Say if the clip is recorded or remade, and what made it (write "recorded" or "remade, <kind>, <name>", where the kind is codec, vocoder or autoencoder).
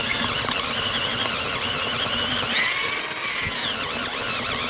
recorded